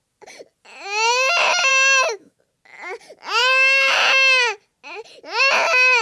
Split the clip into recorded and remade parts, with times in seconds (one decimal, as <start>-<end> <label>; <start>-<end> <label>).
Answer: 0.0-1.7 recorded; 1.7-2.4 remade; 2.4-6.0 recorded